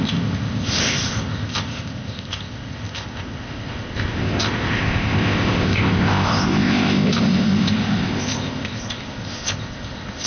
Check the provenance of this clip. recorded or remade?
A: remade